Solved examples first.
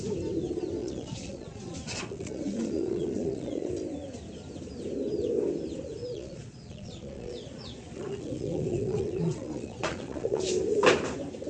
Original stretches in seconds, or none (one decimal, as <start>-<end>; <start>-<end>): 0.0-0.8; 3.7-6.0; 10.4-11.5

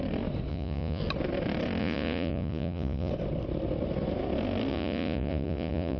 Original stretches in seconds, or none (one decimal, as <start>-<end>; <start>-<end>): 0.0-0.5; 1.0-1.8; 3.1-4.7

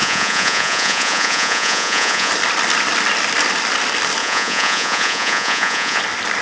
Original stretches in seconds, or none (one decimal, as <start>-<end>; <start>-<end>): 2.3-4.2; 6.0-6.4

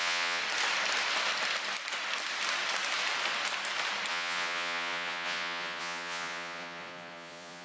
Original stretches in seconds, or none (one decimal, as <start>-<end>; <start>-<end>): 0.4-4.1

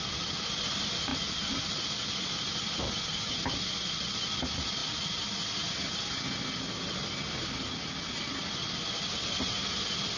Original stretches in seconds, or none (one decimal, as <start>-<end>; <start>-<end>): 0.0-10.2